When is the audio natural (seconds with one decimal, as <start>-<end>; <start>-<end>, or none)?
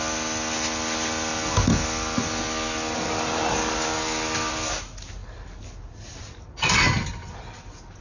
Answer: 0.0-8.0